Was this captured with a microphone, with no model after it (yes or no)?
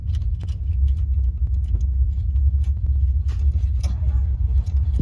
yes